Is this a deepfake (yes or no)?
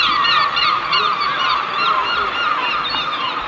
no